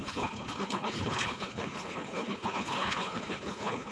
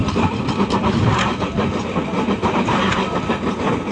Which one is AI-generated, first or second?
first